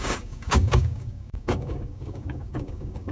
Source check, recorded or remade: remade